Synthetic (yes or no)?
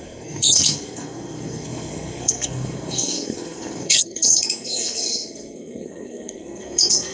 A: yes